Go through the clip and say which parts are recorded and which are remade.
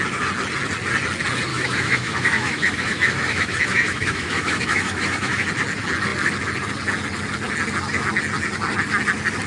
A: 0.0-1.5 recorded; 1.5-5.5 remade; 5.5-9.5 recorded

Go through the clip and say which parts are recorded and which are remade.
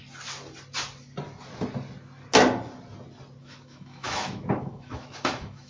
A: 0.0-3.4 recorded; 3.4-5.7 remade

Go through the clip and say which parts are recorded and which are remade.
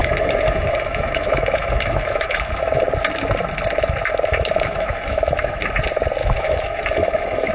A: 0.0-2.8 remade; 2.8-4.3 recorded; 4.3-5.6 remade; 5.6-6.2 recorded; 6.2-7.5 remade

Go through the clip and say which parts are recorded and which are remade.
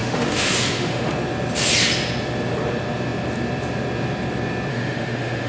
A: 0.0-1.1 remade; 1.1-4.7 recorded; 4.7-5.5 remade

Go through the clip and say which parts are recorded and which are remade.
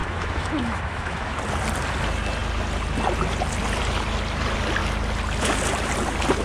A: 0.0-1.4 remade; 1.4-6.4 recorded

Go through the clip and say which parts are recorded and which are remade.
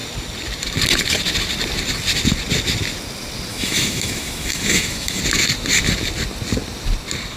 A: 0.0-3.5 recorded; 3.5-5.2 remade; 5.2-7.4 recorded